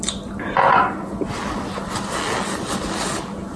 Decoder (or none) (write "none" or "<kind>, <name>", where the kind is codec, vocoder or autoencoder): none